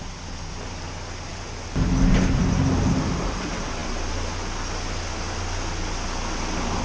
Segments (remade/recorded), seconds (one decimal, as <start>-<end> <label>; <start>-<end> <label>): 0.0-6.8 recorded